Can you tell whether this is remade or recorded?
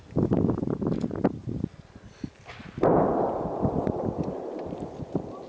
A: recorded